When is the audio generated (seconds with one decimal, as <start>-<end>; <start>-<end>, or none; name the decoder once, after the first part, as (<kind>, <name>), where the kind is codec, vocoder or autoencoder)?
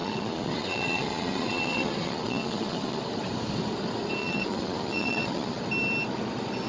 0.0-3.0 (vocoder, Vocos); 4.2-5.6